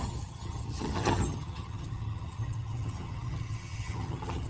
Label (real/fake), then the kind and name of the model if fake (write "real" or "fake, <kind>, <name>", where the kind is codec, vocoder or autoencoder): fake, vocoder, HiFi-GAN